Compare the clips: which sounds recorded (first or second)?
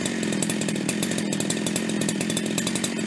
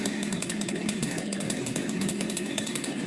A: first